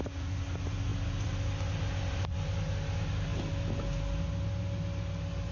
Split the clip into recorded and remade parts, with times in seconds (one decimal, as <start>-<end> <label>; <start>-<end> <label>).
0.0-5.5 recorded

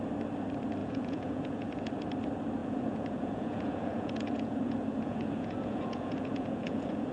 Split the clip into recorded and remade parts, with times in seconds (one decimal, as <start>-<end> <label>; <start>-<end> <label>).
0.0-0.8 recorded; 0.8-1.9 remade; 1.9-2.6 recorded; 2.6-7.1 remade

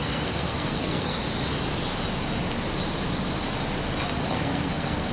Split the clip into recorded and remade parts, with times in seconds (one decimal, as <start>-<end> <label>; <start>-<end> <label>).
0.0-1.2 remade; 1.2-4.3 recorded; 4.3-5.1 remade

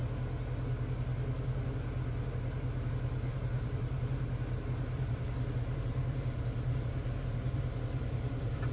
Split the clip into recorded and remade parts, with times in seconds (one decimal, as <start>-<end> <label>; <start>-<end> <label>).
0.0-3.3 recorded; 3.3-8.7 remade